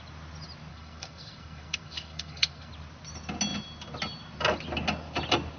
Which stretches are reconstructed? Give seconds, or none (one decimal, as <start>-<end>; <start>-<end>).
0.7-2.7